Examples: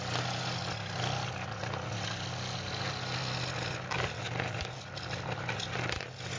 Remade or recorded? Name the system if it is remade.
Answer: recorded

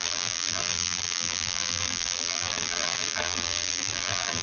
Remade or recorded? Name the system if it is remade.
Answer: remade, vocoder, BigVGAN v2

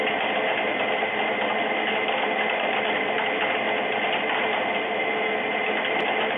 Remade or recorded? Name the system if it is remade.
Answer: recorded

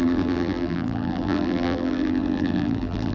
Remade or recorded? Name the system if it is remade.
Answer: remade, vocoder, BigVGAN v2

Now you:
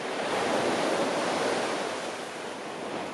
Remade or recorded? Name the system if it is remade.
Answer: remade, vocoder, BigVGAN v2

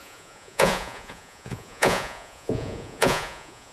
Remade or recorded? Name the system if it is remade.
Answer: remade, vocoder, Vocos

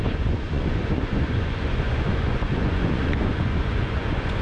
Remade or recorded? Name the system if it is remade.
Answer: remade, vocoder, Vocos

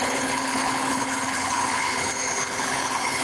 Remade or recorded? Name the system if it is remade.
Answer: remade, codec, HILCodec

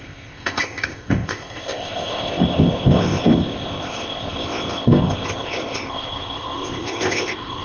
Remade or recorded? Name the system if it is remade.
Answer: remade, codec, ZipCodec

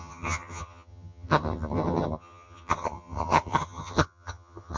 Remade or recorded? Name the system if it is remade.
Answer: remade, vocoder, HiFi-GAN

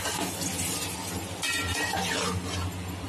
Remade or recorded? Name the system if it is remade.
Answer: recorded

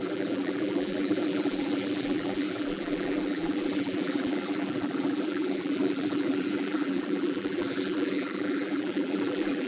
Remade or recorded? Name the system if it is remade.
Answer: remade, vocoder, BigVGAN v2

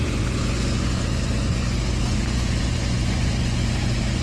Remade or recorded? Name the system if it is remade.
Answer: remade, vocoder, Vocos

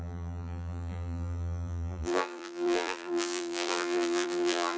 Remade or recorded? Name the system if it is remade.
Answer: remade, vocoder, BigVGAN v2